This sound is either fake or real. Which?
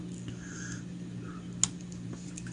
real